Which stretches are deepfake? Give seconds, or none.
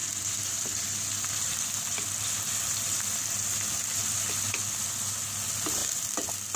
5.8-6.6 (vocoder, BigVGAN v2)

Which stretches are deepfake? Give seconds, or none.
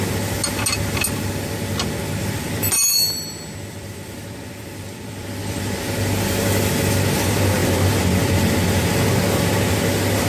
2.2-5.8 (vocoder, BigVGAN v2)